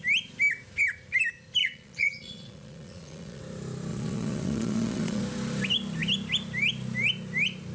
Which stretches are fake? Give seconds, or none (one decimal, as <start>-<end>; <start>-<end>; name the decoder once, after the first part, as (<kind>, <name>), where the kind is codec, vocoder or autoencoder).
1.6-3.4 (vocoder, Vocos); 3.9-5.2

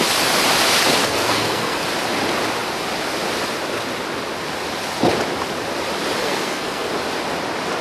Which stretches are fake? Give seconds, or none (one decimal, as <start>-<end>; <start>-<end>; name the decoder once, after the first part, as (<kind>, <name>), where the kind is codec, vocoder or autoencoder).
1.0-1.8 (codec, SNAC); 6.2-6.9

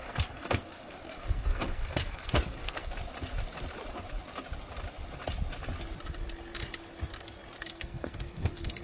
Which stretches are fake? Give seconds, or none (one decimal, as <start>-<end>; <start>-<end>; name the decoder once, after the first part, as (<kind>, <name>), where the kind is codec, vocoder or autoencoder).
0.0-2.9 (codec, SNAC); 7.6-8.8

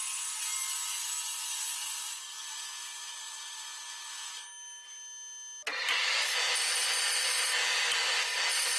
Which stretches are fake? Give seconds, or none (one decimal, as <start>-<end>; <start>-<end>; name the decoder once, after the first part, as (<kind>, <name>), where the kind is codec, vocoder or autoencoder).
none

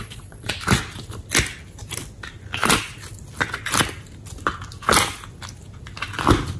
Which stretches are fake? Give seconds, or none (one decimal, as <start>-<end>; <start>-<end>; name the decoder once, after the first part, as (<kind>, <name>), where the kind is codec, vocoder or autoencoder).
0.0-0.5 (vocoder, Vocos)

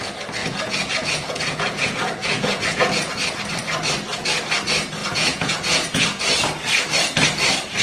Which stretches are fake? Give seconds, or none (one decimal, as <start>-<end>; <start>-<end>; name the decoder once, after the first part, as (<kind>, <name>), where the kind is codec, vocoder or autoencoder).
0.4-3.1 (vocoder, Vocos); 5.0-6.2